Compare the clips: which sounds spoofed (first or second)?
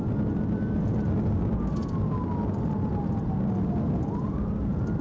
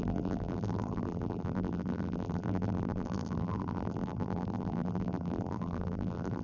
second